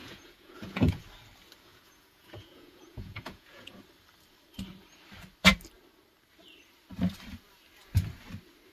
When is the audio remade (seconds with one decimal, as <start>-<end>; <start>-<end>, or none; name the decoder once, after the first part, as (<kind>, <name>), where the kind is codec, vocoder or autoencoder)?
0.0-1.0 (vocoder, Vocos); 1.7-3.8